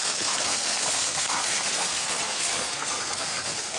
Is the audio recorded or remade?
remade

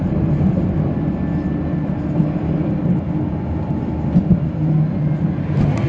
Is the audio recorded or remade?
recorded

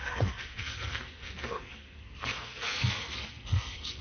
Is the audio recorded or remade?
remade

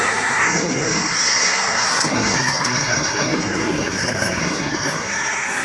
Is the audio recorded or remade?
remade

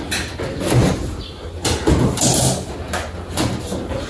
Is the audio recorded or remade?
recorded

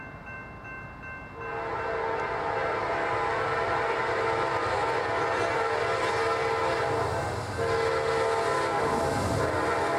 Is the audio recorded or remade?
recorded